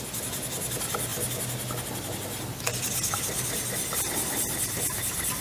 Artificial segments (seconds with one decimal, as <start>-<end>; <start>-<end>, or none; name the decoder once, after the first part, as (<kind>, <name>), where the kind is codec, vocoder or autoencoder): none